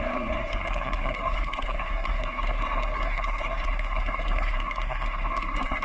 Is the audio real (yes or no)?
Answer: no